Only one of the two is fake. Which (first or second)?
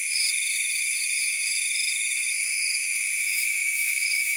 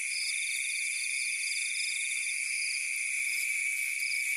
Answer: first